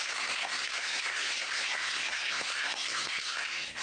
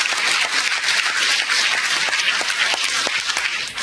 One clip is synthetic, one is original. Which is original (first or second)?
second